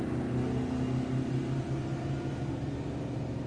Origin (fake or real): real